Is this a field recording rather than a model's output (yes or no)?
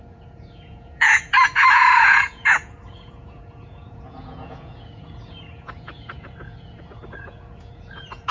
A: no